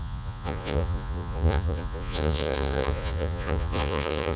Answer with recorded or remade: remade